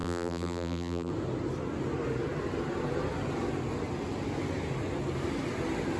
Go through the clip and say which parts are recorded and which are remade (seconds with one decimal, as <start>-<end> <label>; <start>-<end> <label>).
0.0-1.1 remade; 1.1-6.0 recorded